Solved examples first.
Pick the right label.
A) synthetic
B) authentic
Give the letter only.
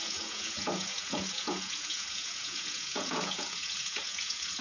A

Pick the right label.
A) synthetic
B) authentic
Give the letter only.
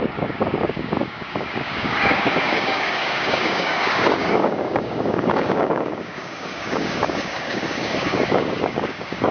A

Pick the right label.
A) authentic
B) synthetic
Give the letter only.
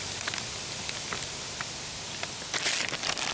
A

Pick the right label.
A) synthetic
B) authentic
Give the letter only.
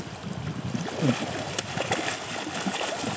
B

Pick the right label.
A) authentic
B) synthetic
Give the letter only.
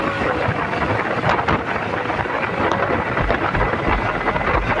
A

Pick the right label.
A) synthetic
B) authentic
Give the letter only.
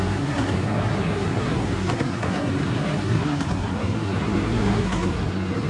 A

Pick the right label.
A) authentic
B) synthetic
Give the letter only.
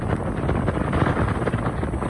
A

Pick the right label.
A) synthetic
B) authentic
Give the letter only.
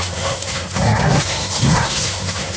A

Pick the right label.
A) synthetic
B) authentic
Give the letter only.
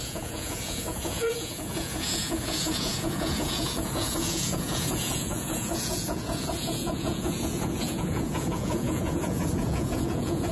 A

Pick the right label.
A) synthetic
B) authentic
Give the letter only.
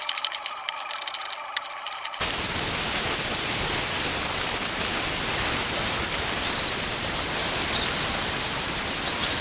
B